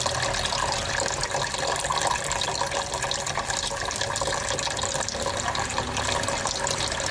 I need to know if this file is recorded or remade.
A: recorded